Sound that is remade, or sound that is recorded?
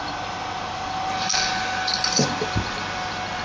recorded